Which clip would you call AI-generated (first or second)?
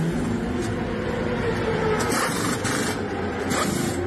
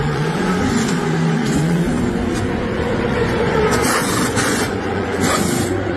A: second